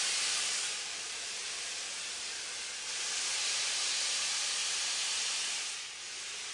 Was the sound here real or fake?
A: real